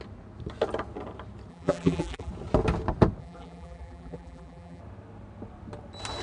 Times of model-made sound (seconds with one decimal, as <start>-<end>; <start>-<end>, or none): 1.5-2.3; 3.2-4.8